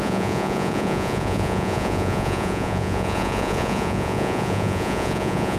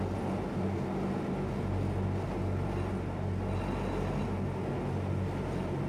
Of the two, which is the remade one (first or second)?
first